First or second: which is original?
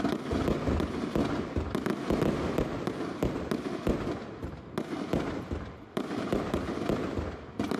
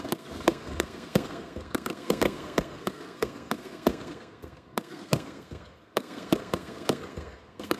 first